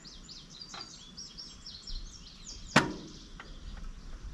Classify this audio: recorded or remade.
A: recorded